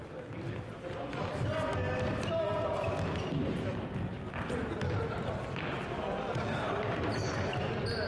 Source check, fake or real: real